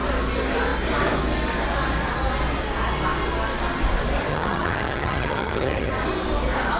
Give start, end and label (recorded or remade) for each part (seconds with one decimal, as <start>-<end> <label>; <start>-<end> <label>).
0.0-4.3 recorded; 4.3-5.9 remade; 5.9-6.8 recorded